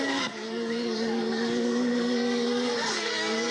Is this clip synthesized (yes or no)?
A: yes